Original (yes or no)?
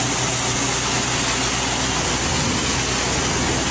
yes